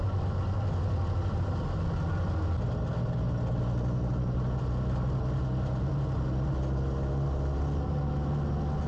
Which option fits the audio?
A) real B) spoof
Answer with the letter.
A